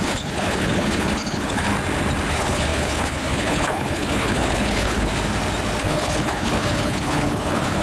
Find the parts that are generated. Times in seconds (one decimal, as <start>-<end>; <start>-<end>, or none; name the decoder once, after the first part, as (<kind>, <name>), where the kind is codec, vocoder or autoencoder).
0.0-1.7 (codec, HILCodec); 2.3-5.1; 5.8-7.8

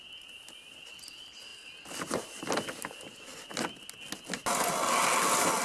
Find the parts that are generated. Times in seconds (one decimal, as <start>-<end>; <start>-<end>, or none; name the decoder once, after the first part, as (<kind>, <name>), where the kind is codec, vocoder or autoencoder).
none